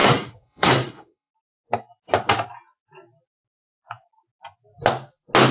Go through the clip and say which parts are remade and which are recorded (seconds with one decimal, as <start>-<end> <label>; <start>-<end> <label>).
0.0-1.3 remade; 1.3-5.5 recorded